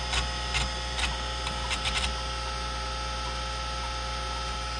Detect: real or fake real